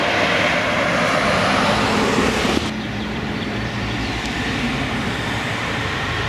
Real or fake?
fake